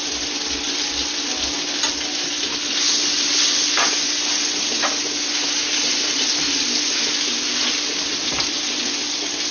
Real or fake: real